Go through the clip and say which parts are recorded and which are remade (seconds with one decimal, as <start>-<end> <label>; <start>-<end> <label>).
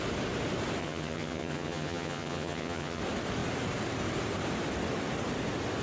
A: 0.0-0.8 recorded; 0.8-3.0 remade; 3.0-5.8 recorded